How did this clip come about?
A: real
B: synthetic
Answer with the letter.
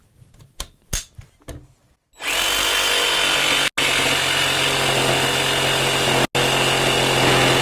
A